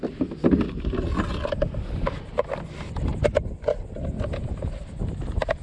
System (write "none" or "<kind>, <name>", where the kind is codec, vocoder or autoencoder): none